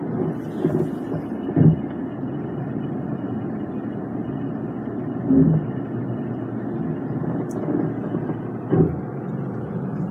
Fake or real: real